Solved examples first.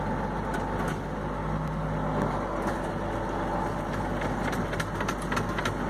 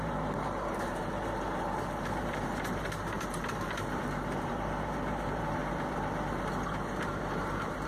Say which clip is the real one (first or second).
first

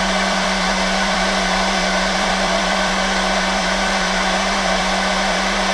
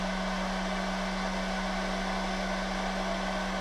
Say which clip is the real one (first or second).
second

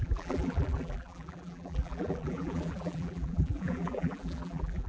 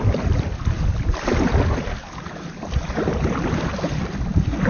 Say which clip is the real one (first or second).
second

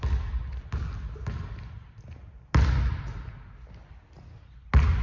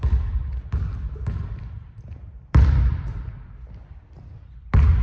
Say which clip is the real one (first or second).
first